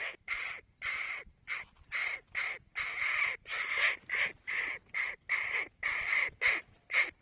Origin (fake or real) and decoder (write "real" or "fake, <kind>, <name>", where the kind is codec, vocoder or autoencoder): real